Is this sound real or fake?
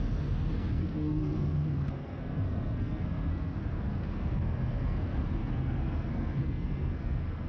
fake